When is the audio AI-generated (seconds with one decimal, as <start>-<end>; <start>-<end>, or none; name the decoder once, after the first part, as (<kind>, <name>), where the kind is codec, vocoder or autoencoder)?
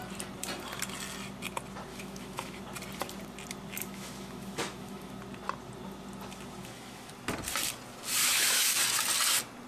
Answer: 1.9-2.6 (autoencoder, DAC-VAE); 3.8-5.1; 6.6-7.1; 8.2-8.8